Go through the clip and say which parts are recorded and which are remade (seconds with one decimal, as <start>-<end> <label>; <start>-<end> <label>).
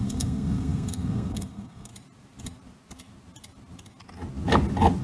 0.0-1.9 remade; 1.9-5.0 recorded